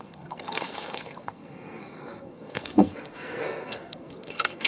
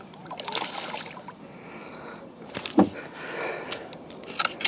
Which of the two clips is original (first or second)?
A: second